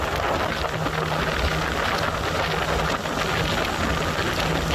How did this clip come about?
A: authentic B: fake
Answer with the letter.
A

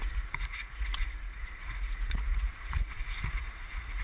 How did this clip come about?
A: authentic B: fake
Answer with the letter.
B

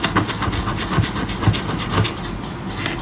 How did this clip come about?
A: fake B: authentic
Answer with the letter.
B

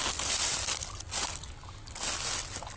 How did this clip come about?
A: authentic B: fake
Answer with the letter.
A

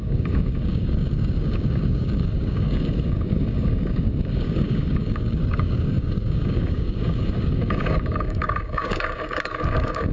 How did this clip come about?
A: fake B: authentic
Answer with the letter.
A